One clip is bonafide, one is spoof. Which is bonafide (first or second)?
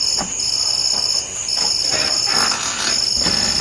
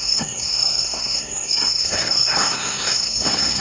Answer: first